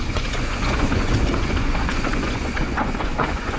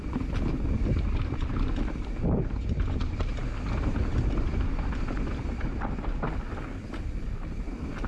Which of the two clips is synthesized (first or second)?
first